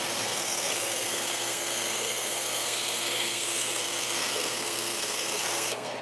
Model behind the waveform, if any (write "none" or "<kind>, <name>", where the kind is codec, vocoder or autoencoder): codec, SNAC